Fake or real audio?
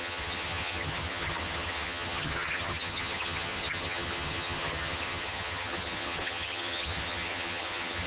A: fake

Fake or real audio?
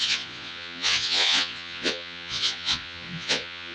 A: fake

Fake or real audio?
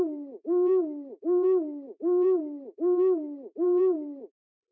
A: fake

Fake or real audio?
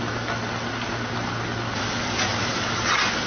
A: real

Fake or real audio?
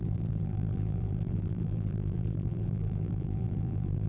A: fake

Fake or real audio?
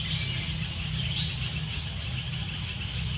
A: real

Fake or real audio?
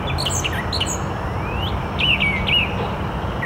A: real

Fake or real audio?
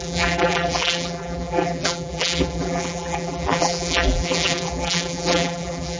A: fake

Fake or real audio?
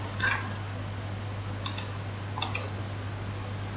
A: real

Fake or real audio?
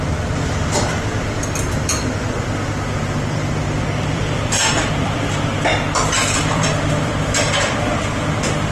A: fake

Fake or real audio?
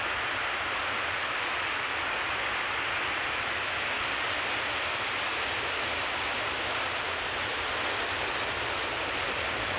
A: real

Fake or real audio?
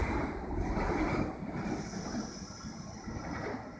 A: real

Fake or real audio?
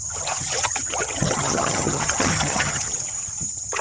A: fake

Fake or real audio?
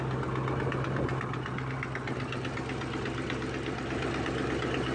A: real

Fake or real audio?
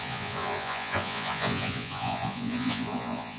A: fake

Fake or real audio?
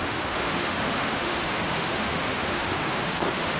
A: fake